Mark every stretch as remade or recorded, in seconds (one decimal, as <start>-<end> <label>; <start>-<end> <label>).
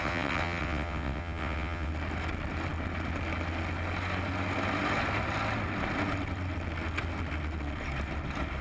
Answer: 0.0-1.9 remade; 1.9-8.6 recorded